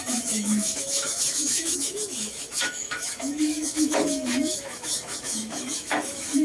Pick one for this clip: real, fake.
fake